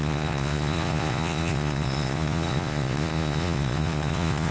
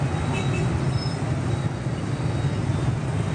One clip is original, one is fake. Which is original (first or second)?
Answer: second